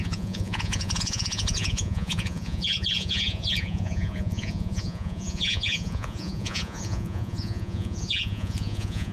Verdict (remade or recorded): remade